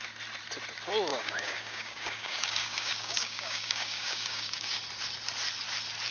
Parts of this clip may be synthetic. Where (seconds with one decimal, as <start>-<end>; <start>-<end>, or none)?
1.1-4.8